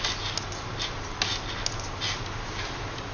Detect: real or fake real